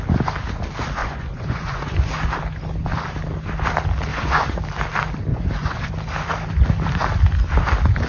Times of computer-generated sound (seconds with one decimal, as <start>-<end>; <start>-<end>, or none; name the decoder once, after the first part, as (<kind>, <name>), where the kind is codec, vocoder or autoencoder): 1.0-2.1 (vocoder, Vocos); 4.1-4.6; 5.3-5.9